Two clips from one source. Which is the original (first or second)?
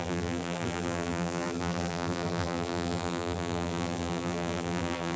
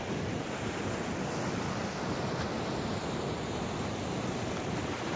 second